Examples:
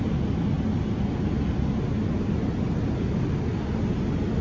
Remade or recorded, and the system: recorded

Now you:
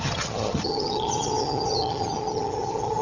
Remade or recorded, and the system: remade, vocoder, HiFi-GAN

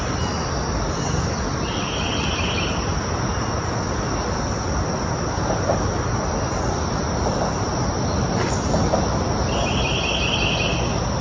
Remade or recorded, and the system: recorded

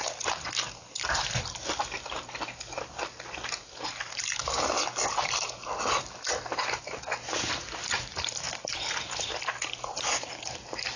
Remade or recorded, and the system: recorded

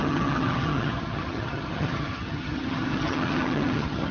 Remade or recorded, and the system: remade, vocoder, HiFi-GAN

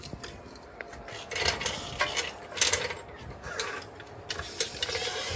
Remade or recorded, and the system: recorded